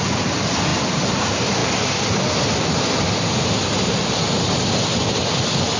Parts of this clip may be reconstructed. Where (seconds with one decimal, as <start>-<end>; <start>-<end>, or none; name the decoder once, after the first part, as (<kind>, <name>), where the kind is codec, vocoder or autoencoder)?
0.7-1.2 (vocoder, BigVGAN v2)